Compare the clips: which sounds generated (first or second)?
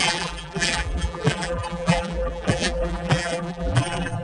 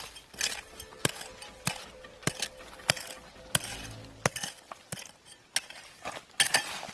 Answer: first